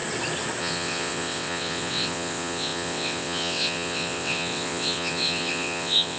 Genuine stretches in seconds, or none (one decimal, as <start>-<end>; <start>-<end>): 0.0-0.6